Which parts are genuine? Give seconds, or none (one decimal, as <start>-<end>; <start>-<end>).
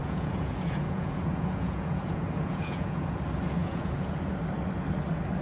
3.2-3.6; 4.3-5.4